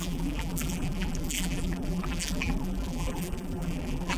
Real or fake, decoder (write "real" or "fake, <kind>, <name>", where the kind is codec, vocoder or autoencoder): fake, vocoder, BigVGAN v2